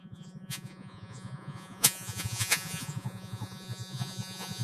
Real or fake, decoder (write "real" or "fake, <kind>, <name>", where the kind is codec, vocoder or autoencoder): fake, vocoder, Vocos